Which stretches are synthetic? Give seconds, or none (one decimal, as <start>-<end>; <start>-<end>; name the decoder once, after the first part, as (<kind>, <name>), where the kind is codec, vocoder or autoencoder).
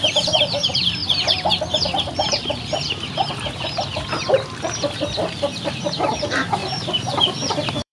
0.0-1.0 (vocoder, BigVGAN v2); 5.7-7.9